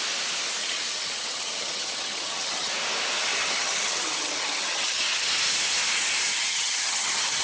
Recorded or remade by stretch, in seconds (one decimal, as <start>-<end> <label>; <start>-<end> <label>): 0.0-0.6 recorded; 0.6-2.7 remade; 2.7-3.3 recorded; 3.3-5.3 remade; 5.3-6.3 recorded; 6.3-7.4 remade